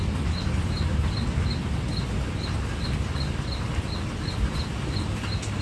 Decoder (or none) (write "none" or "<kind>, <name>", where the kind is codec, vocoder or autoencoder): none